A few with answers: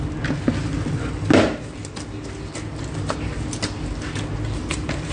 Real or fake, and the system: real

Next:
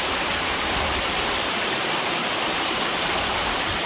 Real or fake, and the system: real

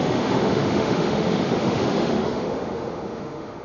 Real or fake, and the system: fake, autoencoder, DAC-VAE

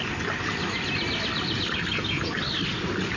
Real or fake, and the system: real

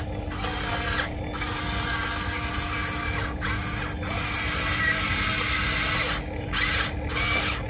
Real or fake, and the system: real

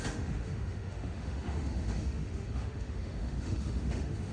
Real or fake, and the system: fake, autoencoder, DAC-VAE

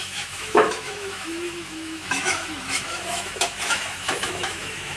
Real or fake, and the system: fake, autoencoder, DAC-VAE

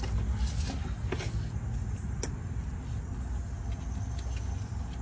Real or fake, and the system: real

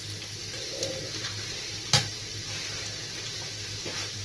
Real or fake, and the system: real